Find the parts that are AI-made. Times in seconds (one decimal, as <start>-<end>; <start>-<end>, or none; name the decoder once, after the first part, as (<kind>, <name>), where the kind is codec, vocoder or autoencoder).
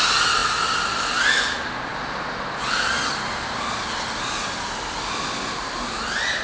none